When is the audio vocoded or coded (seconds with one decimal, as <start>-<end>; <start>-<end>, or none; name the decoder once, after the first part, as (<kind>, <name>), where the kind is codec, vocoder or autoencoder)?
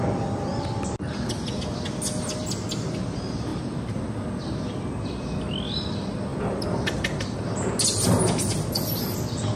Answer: 6.3-7.2 (vocoder, BigVGAN v2)